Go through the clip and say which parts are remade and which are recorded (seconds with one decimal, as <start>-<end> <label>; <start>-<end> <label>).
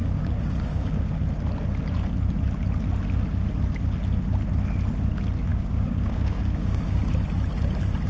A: 0.0-1.2 remade; 1.2-5.5 recorded; 5.5-7.1 remade; 7.1-8.1 recorded